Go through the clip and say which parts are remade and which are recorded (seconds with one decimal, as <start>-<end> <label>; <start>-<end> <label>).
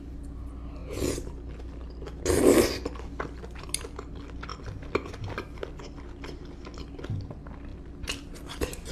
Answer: 0.0-8.9 recorded